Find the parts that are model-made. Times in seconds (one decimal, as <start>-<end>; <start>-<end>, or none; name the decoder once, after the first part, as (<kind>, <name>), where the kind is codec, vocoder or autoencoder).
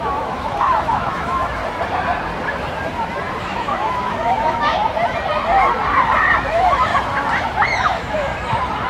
0.0-1.6 (autoencoder, DAC-VAE); 3.4-4.8; 6.5-6.9; 7.8-8.3